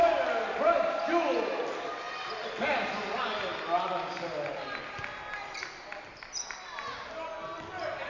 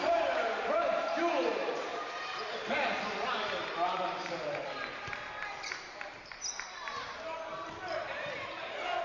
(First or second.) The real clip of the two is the first